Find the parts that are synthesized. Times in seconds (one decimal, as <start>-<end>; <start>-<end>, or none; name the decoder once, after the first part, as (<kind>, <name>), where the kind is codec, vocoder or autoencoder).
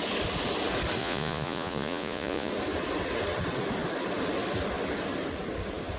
1.0-2.5 (vocoder, Vocos)